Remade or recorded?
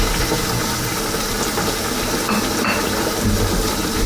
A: recorded